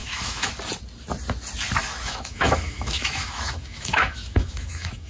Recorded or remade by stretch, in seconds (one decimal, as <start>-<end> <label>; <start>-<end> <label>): 0.0-0.5 remade; 0.5-1.8 recorded; 1.8-5.1 remade